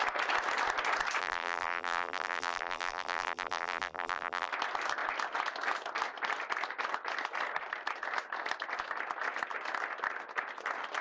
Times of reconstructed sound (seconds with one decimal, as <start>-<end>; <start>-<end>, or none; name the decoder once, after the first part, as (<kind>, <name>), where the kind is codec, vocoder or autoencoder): 1.2-4.5 (vocoder, BigVGAN v2)